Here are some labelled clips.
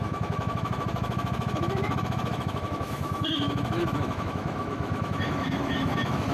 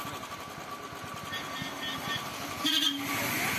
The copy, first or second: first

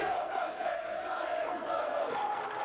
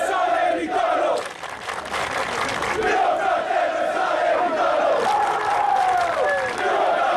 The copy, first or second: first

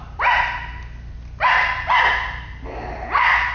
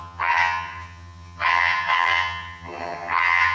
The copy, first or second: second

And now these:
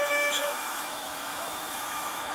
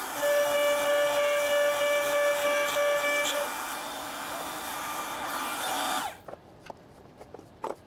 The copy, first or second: first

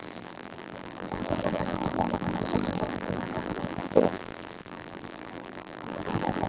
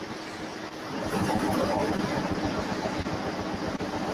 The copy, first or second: first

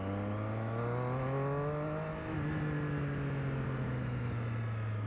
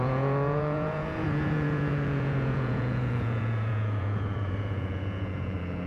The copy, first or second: second